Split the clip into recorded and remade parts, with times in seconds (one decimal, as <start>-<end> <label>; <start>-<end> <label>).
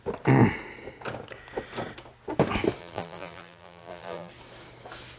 0.0-2.8 recorded; 2.8-4.3 remade; 4.3-5.2 recorded